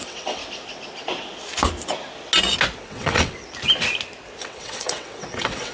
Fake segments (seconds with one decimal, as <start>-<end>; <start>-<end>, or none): 0.0-0.4; 2.8-3.4; 4.4-5.7